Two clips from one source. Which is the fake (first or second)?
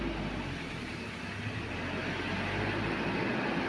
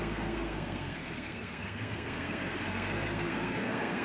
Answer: second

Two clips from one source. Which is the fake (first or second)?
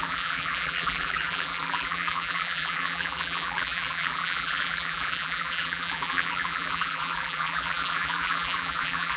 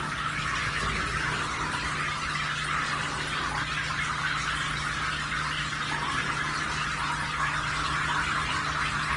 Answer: first